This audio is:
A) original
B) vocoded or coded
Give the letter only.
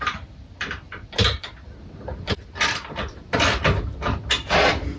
A